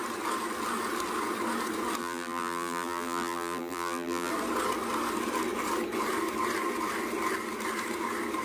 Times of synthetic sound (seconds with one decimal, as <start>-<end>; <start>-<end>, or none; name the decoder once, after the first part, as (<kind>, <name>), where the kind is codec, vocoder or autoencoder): 2.0-4.3 (vocoder, BigVGAN v2)